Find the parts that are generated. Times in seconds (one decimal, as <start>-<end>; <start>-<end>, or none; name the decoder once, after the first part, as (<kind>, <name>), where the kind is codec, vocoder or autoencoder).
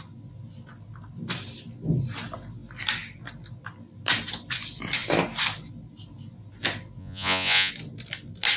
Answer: 7.0-7.7 (vocoder, Vocos)